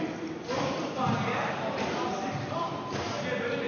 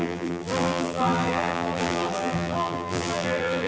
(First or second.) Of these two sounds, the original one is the first